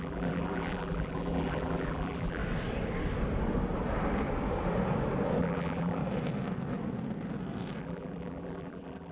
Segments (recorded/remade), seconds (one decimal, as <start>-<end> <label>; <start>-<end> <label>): 0.0-2.4 remade; 2.4-5.4 recorded; 5.4-6.0 remade; 6.0-7.8 recorded; 7.8-9.1 remade